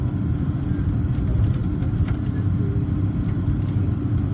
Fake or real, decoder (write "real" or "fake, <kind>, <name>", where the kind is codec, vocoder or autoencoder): real